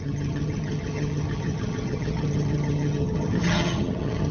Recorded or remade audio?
remade